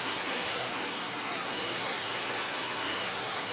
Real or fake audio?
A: fake